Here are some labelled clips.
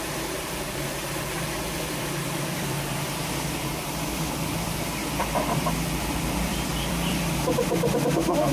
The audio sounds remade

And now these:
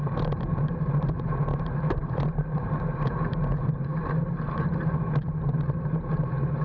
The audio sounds remade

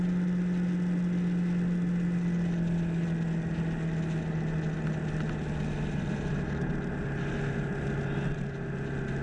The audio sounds recorded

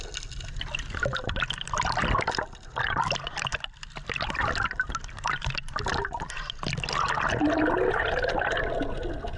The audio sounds recorded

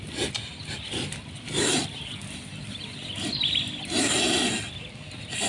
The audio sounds recorded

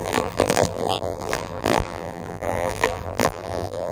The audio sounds remade